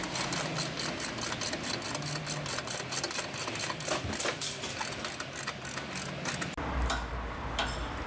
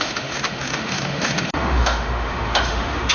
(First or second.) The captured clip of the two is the first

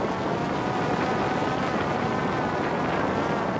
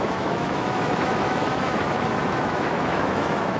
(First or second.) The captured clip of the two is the first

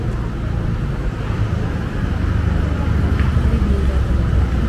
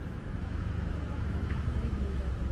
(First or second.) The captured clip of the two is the first